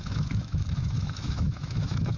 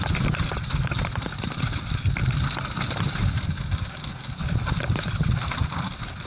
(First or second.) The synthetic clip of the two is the first